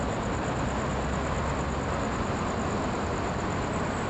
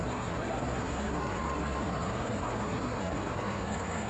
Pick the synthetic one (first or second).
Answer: second